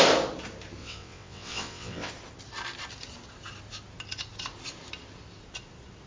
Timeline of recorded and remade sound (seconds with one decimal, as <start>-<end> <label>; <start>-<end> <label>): 0.0-0.8 recorded; 0.8-2.1 remade; 2.1-6.1 recorded